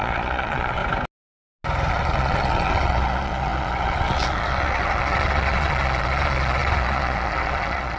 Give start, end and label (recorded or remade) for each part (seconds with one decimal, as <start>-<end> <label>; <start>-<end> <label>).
0.0-0.8 remade; 0.8-1.9 recorded; 1.9-8.0 remade